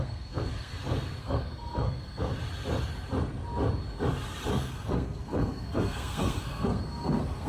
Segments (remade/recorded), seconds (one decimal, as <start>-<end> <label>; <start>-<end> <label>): 0.0-0.7 remade; 0.7-1.2 recorded; 1.2-2.3 remade; 2.3-4.5 recorded; 4.5-7.5 remade